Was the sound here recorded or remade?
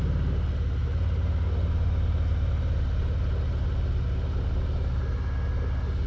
recorded